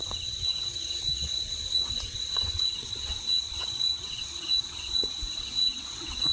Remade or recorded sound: remade